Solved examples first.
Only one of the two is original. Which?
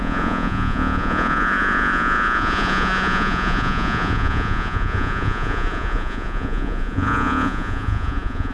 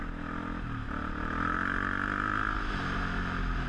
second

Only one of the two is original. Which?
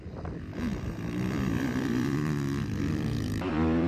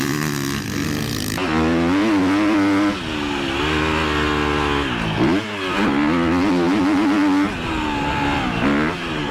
second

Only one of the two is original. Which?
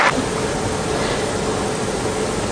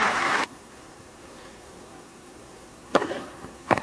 first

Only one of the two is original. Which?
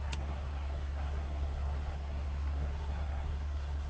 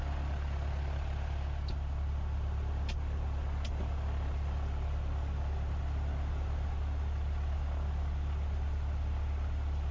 second